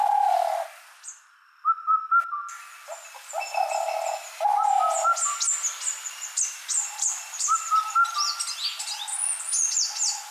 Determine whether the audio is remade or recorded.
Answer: recorded